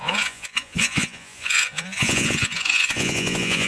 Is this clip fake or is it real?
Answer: fake